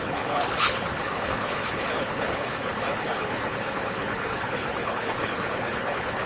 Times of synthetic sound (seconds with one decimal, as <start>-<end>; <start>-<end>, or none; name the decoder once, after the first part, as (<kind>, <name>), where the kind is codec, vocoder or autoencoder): 0.0-6.3 (codec, HILCodec)

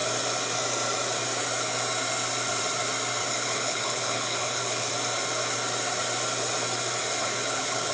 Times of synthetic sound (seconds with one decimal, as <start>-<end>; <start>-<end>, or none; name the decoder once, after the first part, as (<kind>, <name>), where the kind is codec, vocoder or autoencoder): 3.2-4.9 (codec, HILCodec); 7.2-7.9

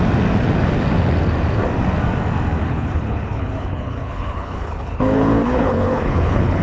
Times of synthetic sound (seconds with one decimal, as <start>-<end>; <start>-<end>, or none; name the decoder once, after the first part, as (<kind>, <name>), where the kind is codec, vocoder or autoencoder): 2.6-6.6 (codec, HILCodec)

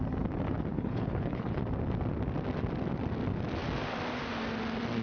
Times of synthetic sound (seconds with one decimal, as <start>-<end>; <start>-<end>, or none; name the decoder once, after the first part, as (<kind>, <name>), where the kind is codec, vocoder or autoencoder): 0.7-1.6 (codec, HILCodec)

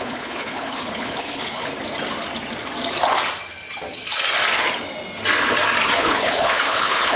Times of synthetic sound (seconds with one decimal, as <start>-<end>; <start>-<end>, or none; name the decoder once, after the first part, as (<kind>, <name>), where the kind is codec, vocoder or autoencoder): 0.0-1.7 (codec, HILCodec); 6.0-7.2

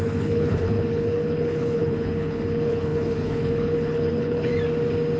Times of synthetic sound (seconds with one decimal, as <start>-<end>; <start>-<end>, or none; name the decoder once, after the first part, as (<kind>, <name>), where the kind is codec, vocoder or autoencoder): 0.0-4.5 (codec, HILCodec)